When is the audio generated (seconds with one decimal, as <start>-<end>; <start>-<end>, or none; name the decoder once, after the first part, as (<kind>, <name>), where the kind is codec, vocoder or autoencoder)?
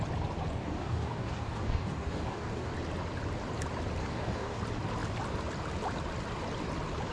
0.6-2.7 (codec, DAC); 4.0-4.6